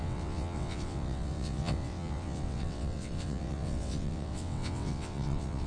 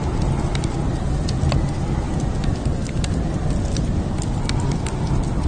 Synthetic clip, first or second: first